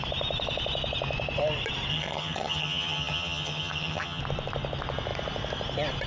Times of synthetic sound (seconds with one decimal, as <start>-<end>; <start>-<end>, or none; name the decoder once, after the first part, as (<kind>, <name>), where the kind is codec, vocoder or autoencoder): 1.9-4.2 (vocoder, HiFi-GAN)